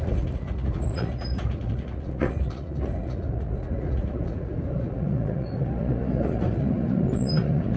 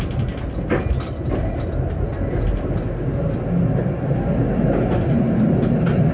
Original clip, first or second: second